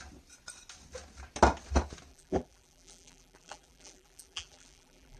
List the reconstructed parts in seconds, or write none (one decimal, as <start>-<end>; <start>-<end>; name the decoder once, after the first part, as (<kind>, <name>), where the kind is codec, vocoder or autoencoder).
2.1-5.2 (vocoder, BigVGAN v2)